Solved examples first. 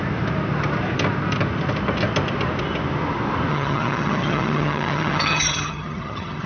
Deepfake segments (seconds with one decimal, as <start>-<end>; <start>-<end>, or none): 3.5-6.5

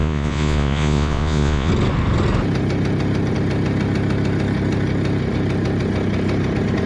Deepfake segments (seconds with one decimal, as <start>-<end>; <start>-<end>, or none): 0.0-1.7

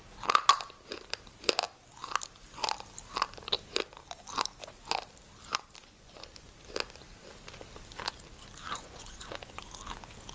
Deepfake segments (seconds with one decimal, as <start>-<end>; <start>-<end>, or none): 5.8-6.5; 8.7-9.6